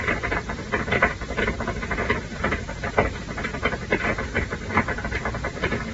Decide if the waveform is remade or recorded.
remade